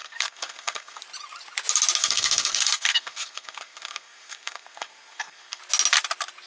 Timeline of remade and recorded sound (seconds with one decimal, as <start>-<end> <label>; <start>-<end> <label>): 0.0-1.0 remade; 1.0-2.0 recorded; 2.0-5.6 remade; 5.6-6.5 recorded